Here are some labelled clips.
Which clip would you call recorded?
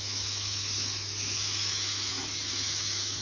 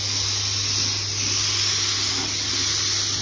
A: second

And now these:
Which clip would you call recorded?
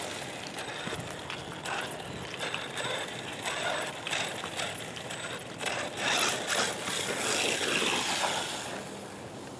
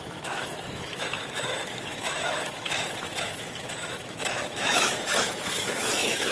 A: first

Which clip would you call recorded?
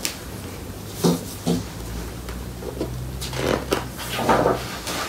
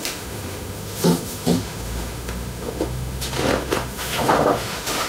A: first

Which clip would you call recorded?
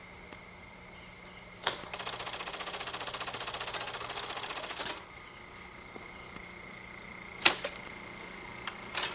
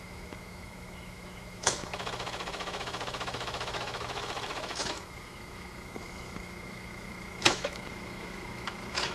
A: first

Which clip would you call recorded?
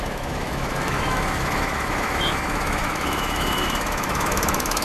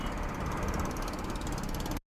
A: second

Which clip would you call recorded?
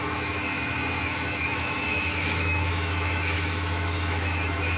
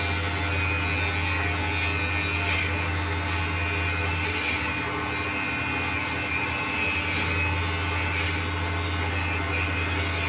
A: second